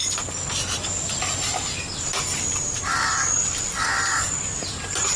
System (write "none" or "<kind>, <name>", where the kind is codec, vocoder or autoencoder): vocoder, BigVGAN v2